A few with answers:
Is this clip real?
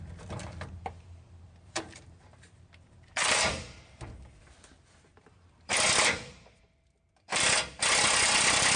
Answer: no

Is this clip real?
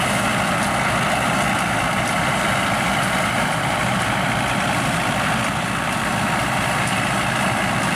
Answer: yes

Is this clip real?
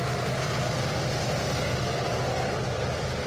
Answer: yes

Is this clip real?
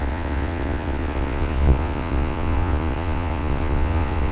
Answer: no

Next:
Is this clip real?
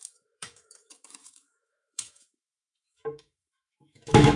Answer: no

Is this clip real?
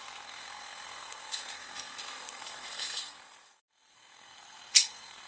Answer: no